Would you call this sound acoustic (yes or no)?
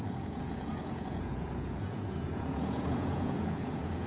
no